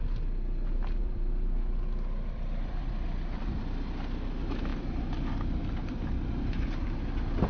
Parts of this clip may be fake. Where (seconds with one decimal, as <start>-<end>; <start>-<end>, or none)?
1.0-3.6; 4.7-6.4